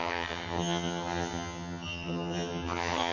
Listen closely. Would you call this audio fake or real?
fake